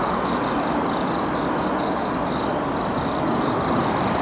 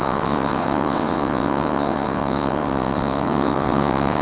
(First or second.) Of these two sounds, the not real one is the second